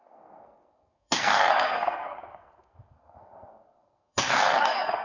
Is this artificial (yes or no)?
yes